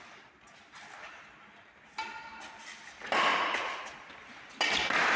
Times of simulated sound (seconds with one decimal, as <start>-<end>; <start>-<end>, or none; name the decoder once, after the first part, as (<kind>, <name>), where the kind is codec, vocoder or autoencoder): 3.3-4.1 (vocoder, Vocos)